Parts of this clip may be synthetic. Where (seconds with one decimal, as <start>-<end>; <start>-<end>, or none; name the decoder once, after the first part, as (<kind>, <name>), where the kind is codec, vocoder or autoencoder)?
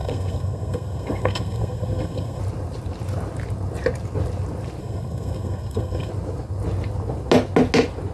0.0-2.4 (codec, SNAC); 4.8-6.1